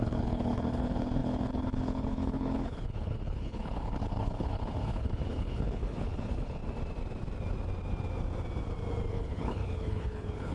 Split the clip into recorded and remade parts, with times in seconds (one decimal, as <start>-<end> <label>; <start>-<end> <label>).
0.0-6.6 remade; 6.6-9.1 recorded; 9.1-10.5 remade